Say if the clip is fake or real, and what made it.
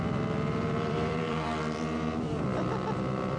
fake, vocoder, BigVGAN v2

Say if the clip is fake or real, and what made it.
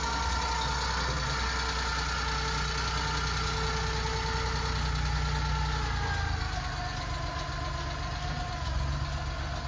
real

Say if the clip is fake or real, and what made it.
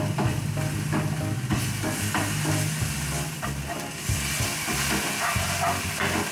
real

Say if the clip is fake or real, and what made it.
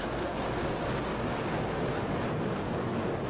real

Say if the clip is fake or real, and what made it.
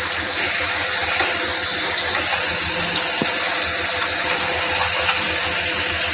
real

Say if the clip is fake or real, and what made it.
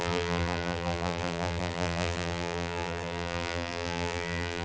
fake, vocoder, BigVGAN v2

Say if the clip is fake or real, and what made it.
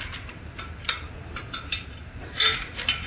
fake, vocoder, BigVGAN v2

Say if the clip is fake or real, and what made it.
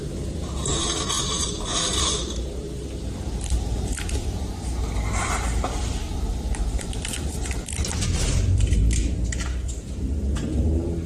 fake, vocoder, BigVGAN v2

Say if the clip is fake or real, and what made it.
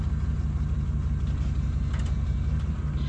real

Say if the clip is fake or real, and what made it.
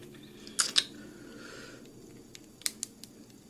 real